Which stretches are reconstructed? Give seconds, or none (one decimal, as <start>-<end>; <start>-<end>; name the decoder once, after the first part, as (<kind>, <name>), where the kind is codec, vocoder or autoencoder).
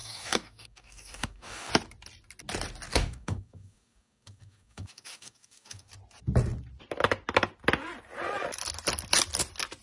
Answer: 0.0-1.7 (codec, DAC); 2.9-5.9